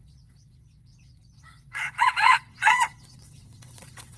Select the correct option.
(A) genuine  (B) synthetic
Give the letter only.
B